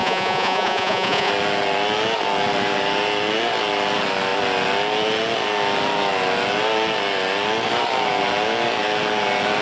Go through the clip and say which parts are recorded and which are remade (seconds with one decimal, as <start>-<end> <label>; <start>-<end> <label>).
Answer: 0.0-1.3 remade; 1.3-9.6 recorded

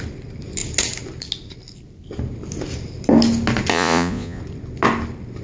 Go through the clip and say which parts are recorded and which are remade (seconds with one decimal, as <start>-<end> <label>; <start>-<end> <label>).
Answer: 0.0-3.7 recorded; 3.7-4.4 remade; 4.4-5.4 recorded

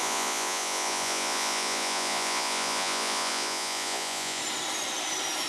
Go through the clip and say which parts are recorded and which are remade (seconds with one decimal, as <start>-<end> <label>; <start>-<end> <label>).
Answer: 0.0-4.4 remade; 4.4-5.5 recorded